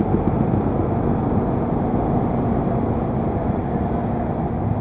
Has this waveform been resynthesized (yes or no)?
no